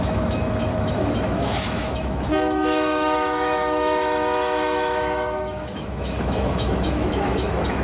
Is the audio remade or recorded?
remade